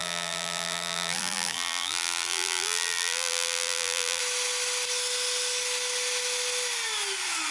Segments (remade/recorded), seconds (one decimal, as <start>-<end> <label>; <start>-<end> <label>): 0.0-4.2 remade; 4.2-7.5 recorded